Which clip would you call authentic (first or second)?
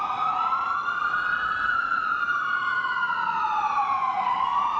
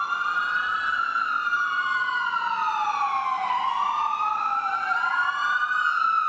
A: second